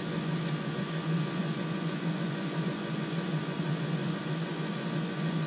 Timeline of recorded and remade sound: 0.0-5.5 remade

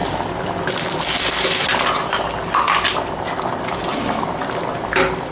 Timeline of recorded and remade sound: 0.0-5.3 recorded

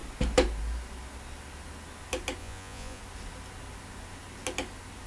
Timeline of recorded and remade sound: 0.0-2.4 recorded; 2.4-3.0 remade; 3.0-5.1 recorded

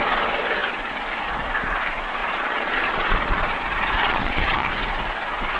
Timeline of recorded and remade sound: 0.0-2.2 recorded; 2.2-4.7 remade; 4.7-5.6 recorded

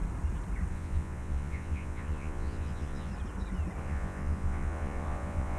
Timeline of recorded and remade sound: 0.0-0.7 recorded; 0.7-3.1 remade; 3.1-3.8 recorded; 3.8-5.6 remade

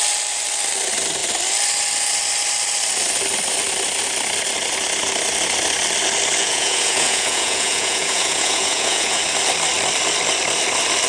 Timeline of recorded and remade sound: 0.0-6.4 recorded; 6.4-9.2 remade; 9.2-11.1 recorded

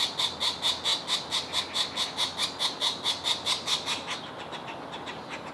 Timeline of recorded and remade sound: 0.0-5.5 recorded